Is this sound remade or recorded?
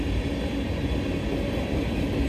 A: recorded